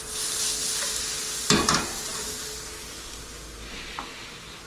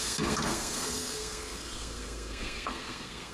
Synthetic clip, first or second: second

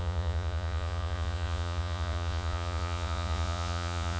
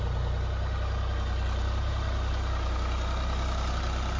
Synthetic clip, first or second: first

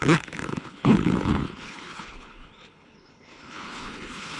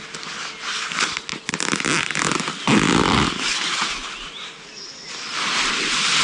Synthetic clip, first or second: first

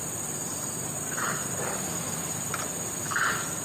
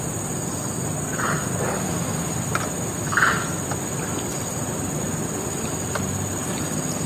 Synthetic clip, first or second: first